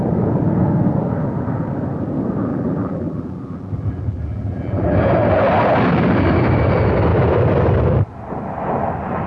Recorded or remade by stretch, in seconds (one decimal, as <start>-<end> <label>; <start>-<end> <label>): 0.0-2.5 recorded; 2.5-5.0 remade; 5.0-9.3 recorded